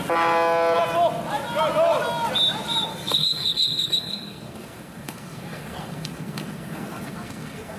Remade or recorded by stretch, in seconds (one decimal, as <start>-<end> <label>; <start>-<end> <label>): 0.0-2.9 recorded; 2.9-7.8 remade